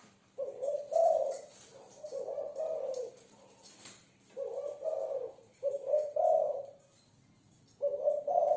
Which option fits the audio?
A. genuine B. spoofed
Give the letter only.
B